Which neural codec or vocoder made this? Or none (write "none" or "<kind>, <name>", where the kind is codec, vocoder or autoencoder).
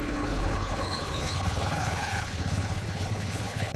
codec, HILCodec